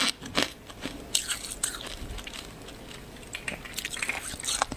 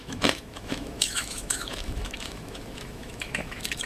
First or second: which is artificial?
second